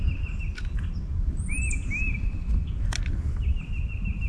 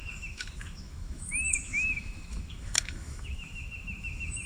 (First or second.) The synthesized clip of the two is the second